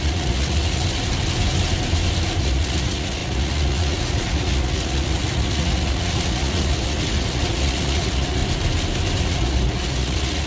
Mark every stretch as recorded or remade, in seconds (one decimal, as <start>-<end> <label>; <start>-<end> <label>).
0.0-0.8 remade; 0.8-2.4 recorded; 2.4-8.4 remade; 8.4-9.2 recorded; 9.2-10.5 remade